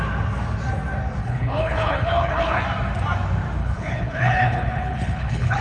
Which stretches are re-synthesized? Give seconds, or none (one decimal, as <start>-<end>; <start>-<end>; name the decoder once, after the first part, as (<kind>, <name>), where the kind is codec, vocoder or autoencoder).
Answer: 1.2-2.6 (codec, HILCodec); 3.6-5.6